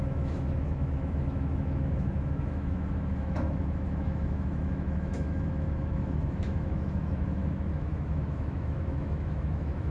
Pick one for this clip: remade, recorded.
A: remade